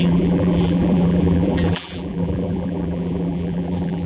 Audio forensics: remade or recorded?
remade